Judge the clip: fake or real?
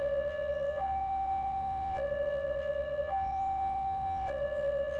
fake